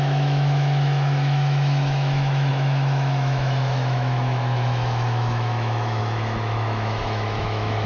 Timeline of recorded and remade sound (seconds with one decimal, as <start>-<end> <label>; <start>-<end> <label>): 0.0-7.9 remade